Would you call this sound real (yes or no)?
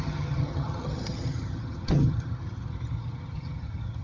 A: no